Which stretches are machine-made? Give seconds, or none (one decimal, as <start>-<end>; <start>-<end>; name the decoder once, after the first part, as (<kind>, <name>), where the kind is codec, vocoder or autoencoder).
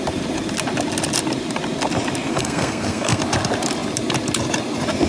2.3-3.2 (codec, SNAC)